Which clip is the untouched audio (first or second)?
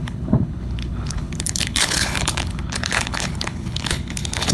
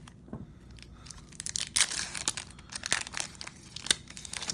second